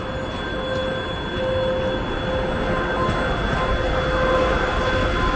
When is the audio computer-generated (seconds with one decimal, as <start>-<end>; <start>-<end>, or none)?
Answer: none